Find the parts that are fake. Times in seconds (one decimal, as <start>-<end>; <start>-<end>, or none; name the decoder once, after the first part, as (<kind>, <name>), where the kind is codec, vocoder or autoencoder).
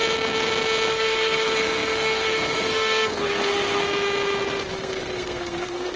0.9-3.8 (codec, SNAC); 4.7-6.0